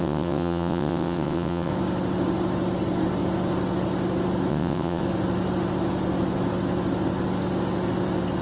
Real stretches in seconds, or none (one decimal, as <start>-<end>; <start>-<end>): 1.7-4.5; 5.0-8.4